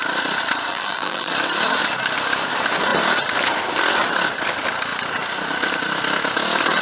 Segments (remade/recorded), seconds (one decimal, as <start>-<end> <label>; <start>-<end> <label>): 0.0-0.7 recorded; 0.7-1.3 remade; 1.3-6.8 recorded

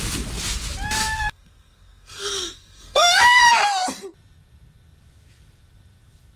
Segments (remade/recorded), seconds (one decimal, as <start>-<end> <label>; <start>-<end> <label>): 0.0-1.0 recorded; 1.0-3.5 remade; 3.5-6.4 recorded

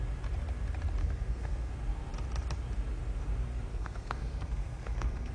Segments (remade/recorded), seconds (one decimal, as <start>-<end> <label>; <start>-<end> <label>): 0.0-1.0 recorded; 1.0-1.7 remade; 1.7-3.7 recorded; 3.7-5.3 remade

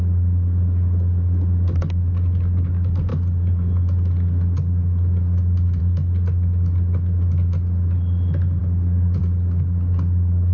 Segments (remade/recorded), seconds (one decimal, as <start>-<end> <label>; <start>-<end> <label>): 0.0-10.5 recorded

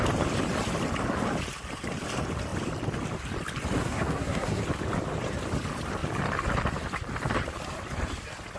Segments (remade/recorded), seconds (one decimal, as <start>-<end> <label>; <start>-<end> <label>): 0.0-3.8 recorded; 3.8-4.6 remade; 4.6-8.6 recorded

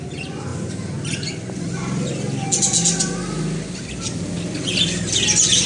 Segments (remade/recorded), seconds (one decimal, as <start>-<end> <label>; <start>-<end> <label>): 0.0-5.7 recorded